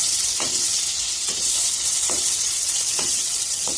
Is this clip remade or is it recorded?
remade